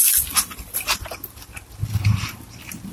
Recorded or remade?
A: recorded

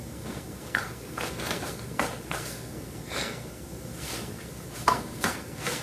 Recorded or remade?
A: remade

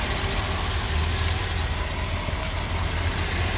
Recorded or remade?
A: recorded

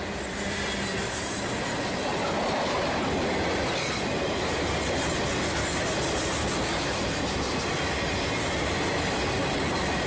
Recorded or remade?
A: recorded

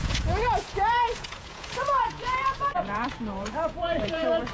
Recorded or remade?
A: remade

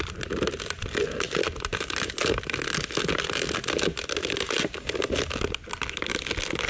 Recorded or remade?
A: recorded